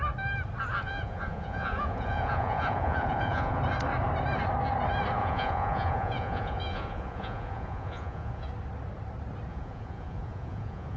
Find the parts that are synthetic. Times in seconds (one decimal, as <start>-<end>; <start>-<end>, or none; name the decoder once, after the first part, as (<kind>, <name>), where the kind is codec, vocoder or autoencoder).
0.7-3.6 (vocoder, Vocos); 5.2-8.5; 9.5-11.0